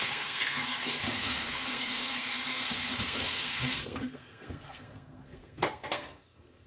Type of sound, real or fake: fake